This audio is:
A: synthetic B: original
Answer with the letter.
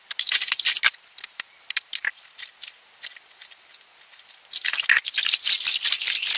B